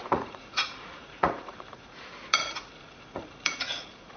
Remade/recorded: remade